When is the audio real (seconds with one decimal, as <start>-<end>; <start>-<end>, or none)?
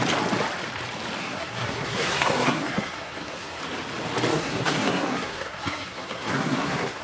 0.0-1.2; 3.6-4.3